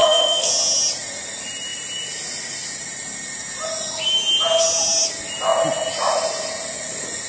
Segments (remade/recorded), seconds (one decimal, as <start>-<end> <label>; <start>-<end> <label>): 0.0-0.5 remade; 0.5-7.3 recorded